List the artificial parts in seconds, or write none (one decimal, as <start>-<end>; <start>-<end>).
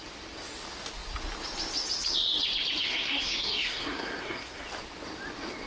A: 2.8-4.6